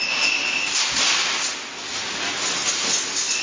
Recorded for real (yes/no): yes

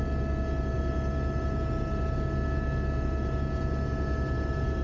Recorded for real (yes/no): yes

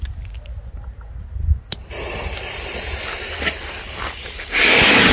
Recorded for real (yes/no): yes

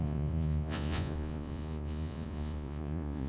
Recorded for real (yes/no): no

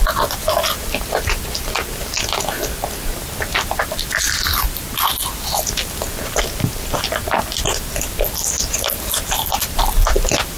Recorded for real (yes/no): yes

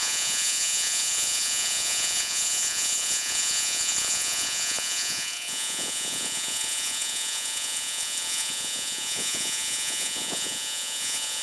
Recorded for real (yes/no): no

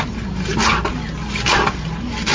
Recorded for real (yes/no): yes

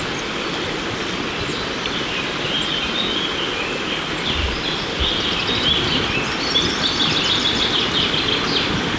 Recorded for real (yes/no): yes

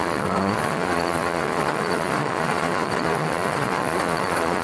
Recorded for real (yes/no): no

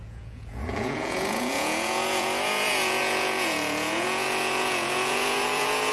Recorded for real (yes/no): no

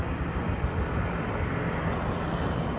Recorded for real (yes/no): yes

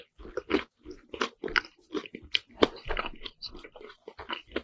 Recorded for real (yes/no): yes